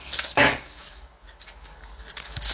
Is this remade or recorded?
remade